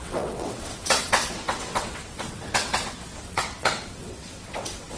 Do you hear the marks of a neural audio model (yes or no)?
yes